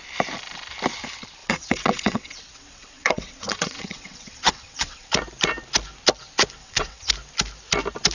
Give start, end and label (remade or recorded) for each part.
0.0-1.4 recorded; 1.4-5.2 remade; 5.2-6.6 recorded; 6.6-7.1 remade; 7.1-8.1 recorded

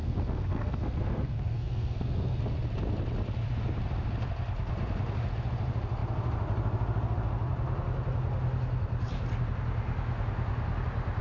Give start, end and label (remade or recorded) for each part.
0.0-2.4 remade; 2.4-11.2 recorded

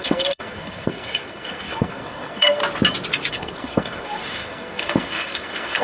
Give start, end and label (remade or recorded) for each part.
0.0-2.6 remade; 2.6-3.3 recorded; 3.3-5.8 remade

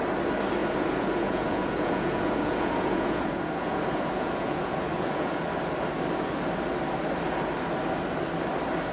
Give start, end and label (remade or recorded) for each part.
0.0-0.6 recorded; 0.6-5.4 remade; 5.4-8.9 recorded

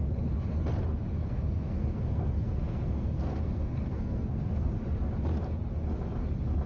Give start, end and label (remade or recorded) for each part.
0.0-1.2 recorded; 1.2-4.7 remade; 4.7-6.7 recorded